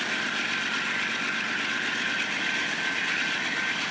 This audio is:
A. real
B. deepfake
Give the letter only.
A